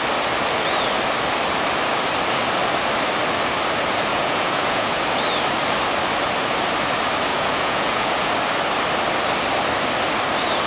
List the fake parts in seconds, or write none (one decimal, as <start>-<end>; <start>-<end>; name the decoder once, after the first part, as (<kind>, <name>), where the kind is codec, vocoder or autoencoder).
4.1-5.0 (vocoder, Vocos); 7.3-8.3